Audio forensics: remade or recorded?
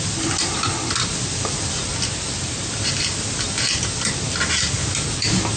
recorded